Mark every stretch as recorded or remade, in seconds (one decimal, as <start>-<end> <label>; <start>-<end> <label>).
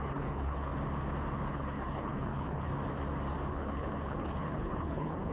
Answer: 0.0-0.7 remade; 0.7-1.5 recorded; 1.5-2.7 remade; 2.7-3.5 recorded; 3.5-5.3 remade